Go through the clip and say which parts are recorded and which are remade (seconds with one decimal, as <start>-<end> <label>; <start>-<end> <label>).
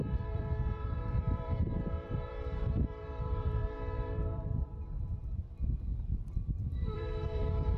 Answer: 0.0-5.4 remade; 5.4-6.1 recorded; 6.1-7.8 remade